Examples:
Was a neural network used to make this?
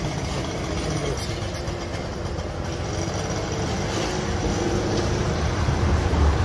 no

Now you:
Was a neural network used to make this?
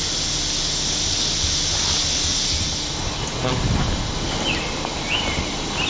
no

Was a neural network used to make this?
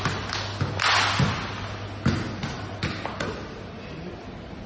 no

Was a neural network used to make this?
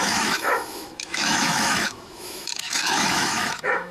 yes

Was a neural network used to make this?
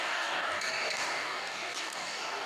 yes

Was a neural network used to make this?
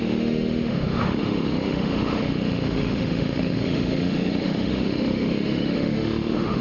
yes